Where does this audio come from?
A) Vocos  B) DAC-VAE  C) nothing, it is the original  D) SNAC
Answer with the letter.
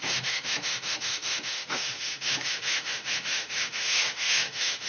B